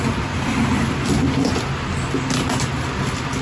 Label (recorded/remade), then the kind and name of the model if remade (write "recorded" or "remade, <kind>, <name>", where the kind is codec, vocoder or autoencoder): recorded